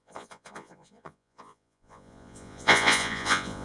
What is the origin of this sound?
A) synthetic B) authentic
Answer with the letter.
A